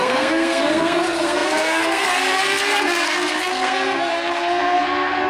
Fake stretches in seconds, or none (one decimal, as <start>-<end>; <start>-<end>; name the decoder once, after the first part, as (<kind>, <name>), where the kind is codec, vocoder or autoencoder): 0.0-5.3 (codec, SNAC)